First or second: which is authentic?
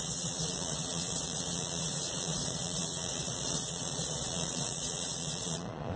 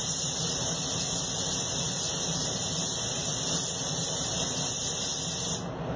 second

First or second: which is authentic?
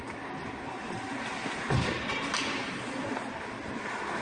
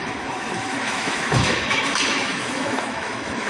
first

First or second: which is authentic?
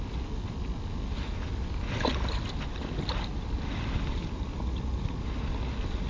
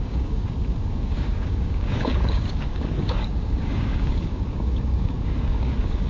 first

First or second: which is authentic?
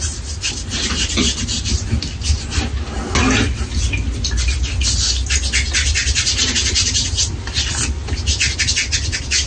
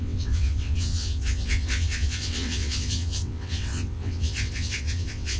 first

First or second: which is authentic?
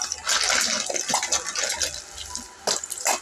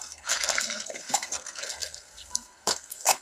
first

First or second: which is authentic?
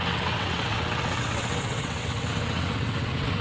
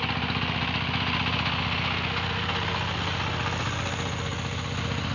second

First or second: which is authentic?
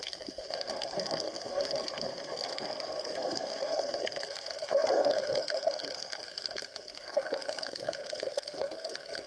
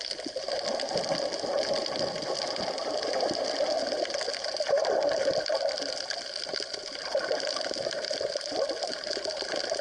second